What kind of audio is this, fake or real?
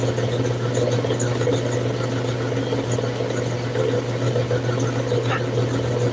real